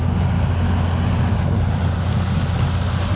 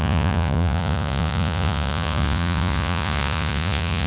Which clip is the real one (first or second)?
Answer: first